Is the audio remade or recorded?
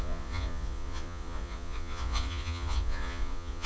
remade